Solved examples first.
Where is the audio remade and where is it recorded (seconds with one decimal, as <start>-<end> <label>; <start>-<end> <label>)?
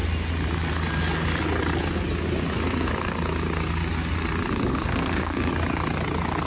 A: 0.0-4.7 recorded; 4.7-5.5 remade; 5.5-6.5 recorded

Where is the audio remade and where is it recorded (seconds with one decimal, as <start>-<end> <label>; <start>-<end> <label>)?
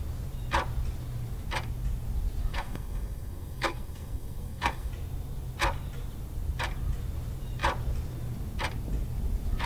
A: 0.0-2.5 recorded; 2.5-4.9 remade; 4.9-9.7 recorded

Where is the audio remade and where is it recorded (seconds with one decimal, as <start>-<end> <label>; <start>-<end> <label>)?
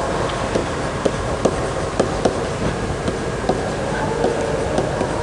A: 0.0-0.6 recorded; 0.6-1.2 remade; 1.2-5.2 recorded